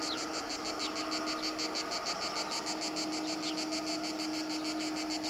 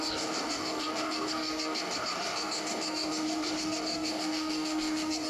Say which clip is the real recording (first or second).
first